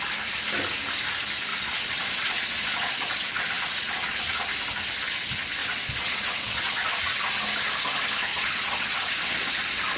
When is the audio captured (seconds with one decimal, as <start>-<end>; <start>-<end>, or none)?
0.0-1.5; 4.5-5.6; 6.9-8.3; 9.6-10.0